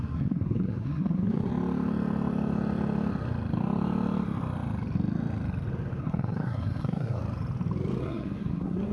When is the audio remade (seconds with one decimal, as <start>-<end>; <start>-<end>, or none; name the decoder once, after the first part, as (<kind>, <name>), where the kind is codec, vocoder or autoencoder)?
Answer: 0.0-1.5 (codec, SNAC); 6.0-7.2; 8.0-8.9